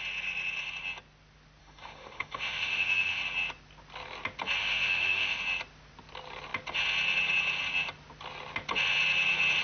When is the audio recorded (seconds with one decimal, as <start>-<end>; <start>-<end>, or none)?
0.0-1.6; 3.2-4.6; 5.4-9.6